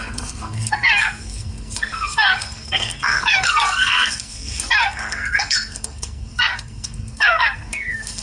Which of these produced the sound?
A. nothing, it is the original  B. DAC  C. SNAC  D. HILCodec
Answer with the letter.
C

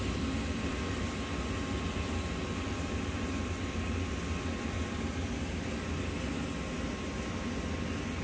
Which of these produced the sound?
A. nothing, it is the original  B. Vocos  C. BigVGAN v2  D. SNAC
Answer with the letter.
A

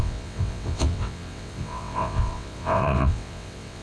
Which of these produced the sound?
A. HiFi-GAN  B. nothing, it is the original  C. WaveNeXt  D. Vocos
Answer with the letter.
C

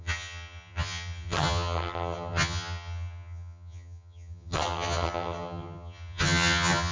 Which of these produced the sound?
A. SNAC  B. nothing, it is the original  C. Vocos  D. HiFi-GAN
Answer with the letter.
D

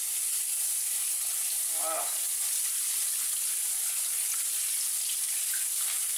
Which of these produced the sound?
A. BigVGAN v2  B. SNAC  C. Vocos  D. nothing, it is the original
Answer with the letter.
D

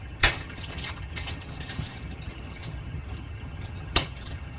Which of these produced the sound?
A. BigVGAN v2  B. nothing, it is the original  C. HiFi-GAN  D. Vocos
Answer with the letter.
C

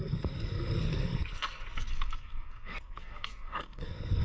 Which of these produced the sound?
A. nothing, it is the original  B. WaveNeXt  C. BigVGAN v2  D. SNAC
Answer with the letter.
D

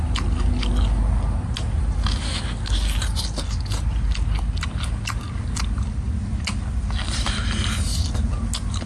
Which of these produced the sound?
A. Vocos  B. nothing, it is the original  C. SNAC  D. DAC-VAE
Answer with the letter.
B